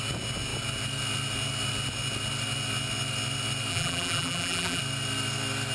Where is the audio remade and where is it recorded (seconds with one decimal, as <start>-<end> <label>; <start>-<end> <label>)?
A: 0.0-3.7 recorded; 3.7-4.8 remade; 4.8-5.7 recorded

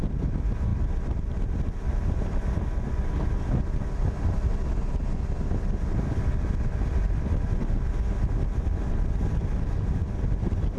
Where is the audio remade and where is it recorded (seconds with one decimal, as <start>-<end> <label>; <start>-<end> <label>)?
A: 0.0-10.8 recorded

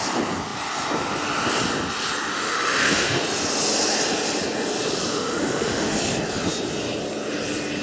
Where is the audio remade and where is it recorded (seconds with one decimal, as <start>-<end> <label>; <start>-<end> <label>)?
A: 0.0-2.3 recorded; 2.3-3.2 remade; 3.2-5.1 recorded; 5.1-6.0 remade; 6.0-7.8 recorded

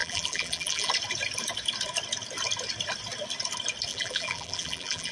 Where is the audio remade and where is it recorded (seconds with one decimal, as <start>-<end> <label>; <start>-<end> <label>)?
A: 0.0-0.9 remade; 0.9-3.9 recorded; 3.9-5.1 remade

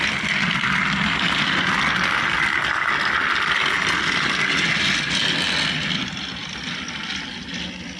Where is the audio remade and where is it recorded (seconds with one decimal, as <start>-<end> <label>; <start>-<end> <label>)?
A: 0.0-6.4 recorded; 6.4-7.1 remade; 7.1-8.0 recorded